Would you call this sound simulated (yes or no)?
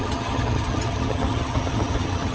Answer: yes